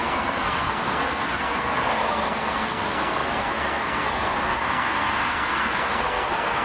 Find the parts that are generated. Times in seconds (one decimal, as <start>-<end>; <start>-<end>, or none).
0.0-6.6